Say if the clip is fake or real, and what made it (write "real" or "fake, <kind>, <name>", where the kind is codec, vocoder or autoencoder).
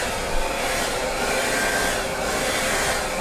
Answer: real